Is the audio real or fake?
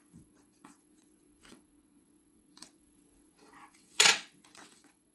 fake